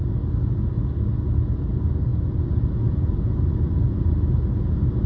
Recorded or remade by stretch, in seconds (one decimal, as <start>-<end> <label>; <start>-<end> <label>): 0.0-2.1 recorded; 2.1-3.8 remade; 3.8-5.1 recorded